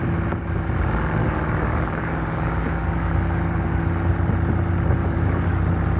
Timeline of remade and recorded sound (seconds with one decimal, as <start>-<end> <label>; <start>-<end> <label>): 0.0-1.2 recorded; 1.2-3.8 remade; 3.8-5.0 recorded; 5.0-5.6 remade; 5.6-6.0 recorded